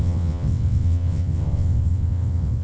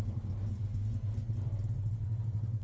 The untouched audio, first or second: second